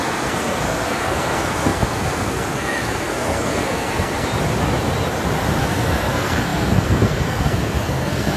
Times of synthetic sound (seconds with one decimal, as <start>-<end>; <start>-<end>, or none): 0.0-4.3; 5.6-8.4